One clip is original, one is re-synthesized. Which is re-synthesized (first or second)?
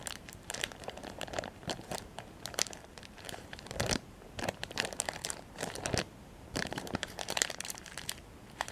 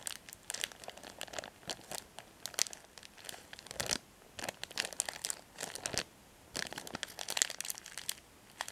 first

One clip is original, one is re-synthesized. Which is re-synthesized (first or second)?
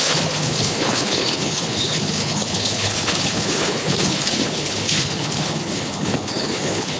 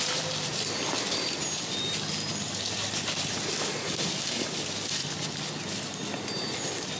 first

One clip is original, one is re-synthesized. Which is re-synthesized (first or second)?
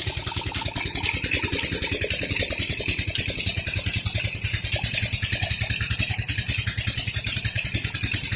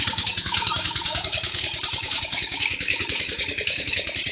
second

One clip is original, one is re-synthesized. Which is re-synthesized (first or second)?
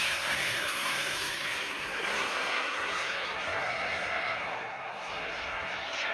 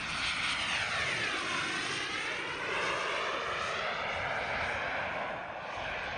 first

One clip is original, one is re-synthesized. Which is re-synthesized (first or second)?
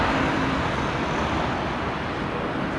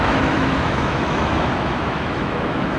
second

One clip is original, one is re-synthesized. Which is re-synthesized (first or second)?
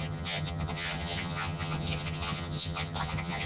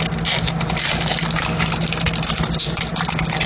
first